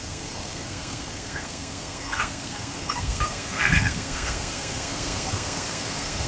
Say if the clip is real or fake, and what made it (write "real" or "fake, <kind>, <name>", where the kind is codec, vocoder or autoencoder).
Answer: fake, codec, SNAC